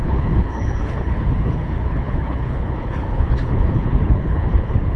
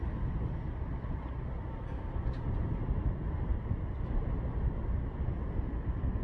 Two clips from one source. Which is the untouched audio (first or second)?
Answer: second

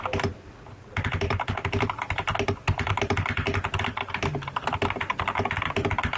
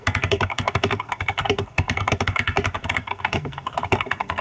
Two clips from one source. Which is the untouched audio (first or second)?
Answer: first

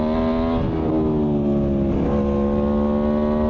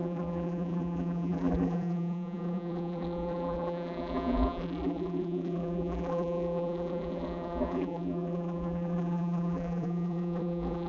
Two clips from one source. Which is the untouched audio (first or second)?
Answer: first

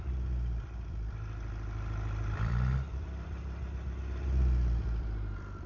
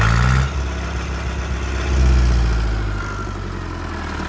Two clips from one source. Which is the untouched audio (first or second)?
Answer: second